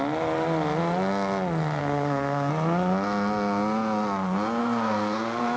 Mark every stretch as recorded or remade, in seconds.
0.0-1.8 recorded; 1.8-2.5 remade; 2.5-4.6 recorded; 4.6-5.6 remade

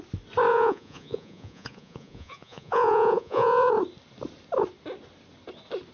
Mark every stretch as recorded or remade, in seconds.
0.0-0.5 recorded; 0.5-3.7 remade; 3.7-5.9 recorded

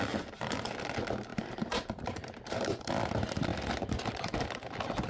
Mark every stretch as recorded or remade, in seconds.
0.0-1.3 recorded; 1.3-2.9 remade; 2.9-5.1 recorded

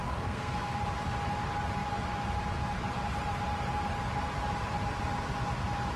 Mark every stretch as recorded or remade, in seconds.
0.0-0.8 remade; 0.8-6.0 recorded

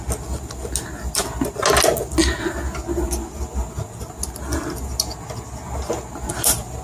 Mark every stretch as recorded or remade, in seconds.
0.0-6.8 recorded

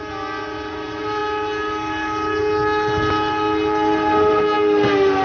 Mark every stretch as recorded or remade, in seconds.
0.0-5.2 recorded